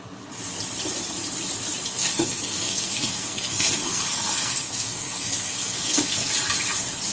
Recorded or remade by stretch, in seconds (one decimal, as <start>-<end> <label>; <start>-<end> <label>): 0.0-2.0 recorded; 2.0-6.3 remade; 6.3-7.1 recorded